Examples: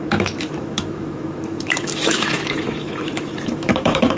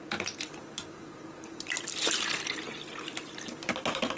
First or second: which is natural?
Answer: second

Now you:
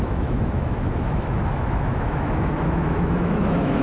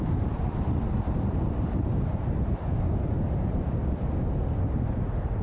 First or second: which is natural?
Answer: second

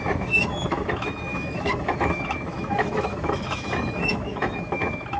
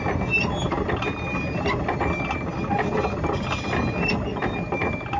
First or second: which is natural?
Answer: second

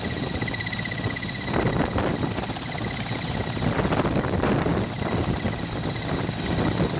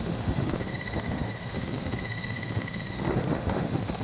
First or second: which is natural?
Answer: first